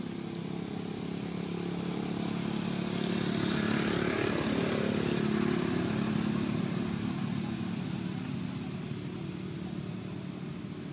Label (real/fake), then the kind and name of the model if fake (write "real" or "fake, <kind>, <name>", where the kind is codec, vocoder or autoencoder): real